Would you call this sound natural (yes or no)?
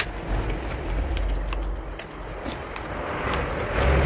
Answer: yes